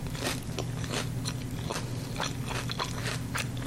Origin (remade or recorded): recorded